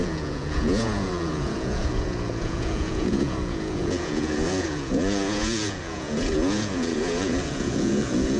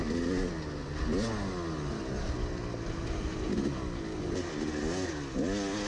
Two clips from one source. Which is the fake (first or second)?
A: first